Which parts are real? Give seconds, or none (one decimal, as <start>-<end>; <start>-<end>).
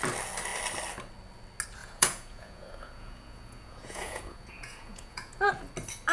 0.0-1.8; 5.5-6.1